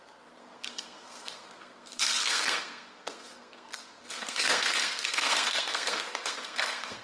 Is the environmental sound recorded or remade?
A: remade